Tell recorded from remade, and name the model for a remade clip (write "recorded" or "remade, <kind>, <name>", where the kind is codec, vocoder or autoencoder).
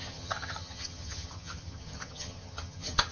remade, vocoder, HiFi-GAN